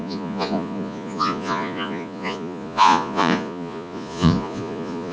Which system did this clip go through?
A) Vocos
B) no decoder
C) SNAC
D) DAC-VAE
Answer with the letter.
A